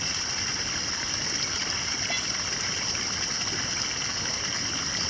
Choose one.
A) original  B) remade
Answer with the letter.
A